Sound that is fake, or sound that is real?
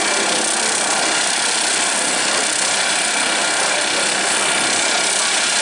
real